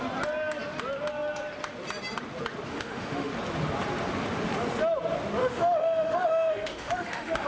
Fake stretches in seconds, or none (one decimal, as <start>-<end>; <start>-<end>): 2.7-3.3; 5.4-7.5